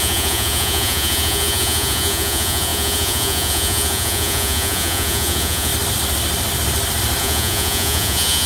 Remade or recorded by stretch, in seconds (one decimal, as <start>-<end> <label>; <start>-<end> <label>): 0.0-5.7 remade; 5.7-7.2 recorded; 7.2-8.5 remade